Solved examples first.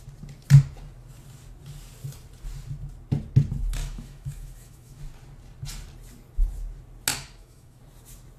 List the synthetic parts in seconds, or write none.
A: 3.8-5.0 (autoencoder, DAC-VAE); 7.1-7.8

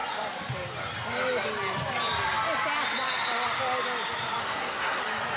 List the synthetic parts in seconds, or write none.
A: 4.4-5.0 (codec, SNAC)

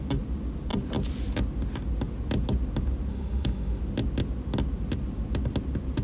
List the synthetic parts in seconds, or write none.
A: 3.1-3.8 (autoencoder, DAC-VAE)

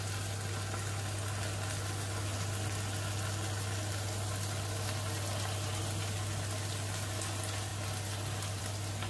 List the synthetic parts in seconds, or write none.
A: none

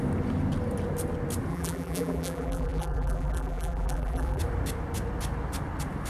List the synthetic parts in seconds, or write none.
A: 1.5-4.4 (vocoder, BigVGAN v2)

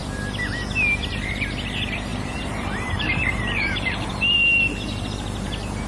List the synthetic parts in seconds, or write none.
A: 2.1-4.1 (vocoder, BigVGAN v2)